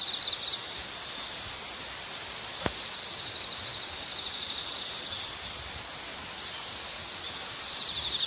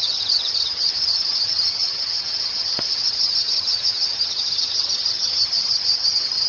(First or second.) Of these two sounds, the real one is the first